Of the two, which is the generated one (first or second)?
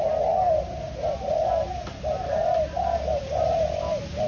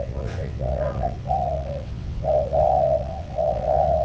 second